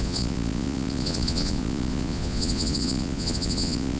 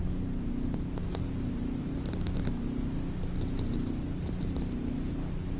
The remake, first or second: first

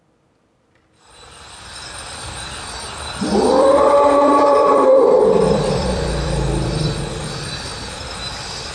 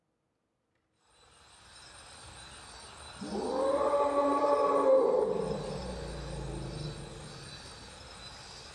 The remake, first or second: first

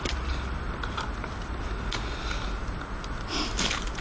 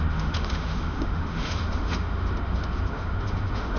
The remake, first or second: second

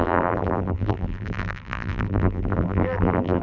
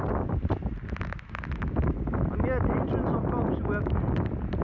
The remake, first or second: first